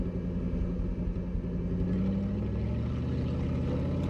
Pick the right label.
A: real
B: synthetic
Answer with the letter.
A